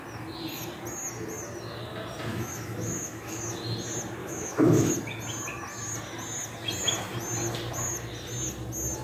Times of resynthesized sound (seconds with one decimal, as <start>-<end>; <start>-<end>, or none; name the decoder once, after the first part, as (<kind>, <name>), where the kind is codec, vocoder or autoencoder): 2.3-3.4 (autoencoder, DAC-VAE); 4.2-4.9